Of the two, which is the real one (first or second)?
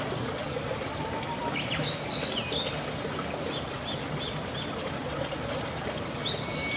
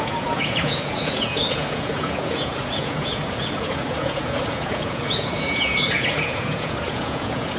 first